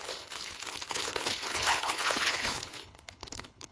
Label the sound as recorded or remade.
remade